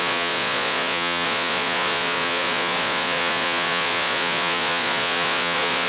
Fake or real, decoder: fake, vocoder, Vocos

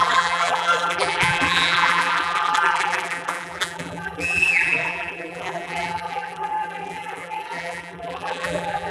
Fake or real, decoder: fake, vocoder, BigVGAN v2